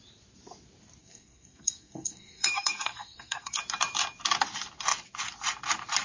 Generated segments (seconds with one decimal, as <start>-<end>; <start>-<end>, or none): 1.0-3.6

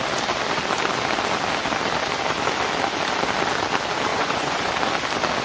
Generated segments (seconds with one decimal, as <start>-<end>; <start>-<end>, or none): 4.1-4.7